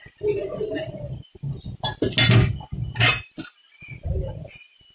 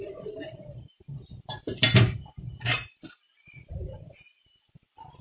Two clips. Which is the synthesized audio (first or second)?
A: second